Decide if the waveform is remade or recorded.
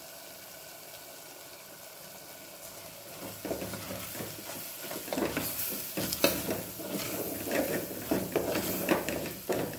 recorded